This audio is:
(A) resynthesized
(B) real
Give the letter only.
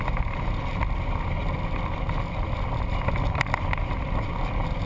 B